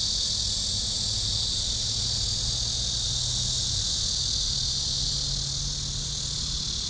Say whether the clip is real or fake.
real